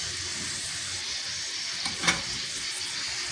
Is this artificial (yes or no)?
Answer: no